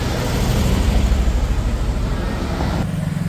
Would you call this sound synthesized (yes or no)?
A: no